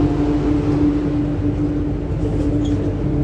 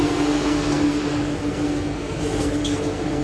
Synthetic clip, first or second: second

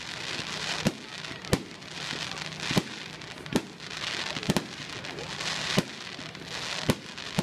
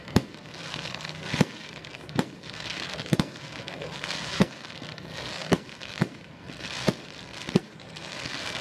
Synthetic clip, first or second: second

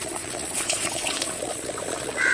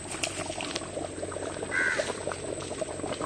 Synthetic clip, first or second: first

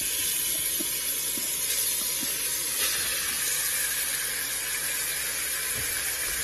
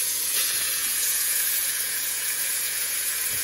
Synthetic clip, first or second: second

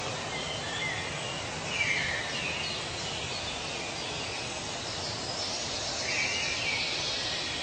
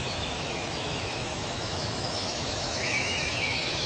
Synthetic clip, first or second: second